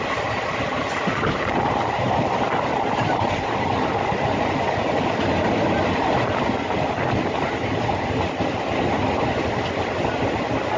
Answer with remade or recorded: recorded